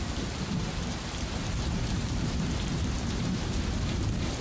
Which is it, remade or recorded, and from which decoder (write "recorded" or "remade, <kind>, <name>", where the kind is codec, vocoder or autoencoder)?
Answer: remade, vocoder, BigVGAN v2